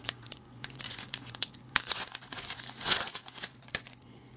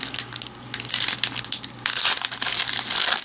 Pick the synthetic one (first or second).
first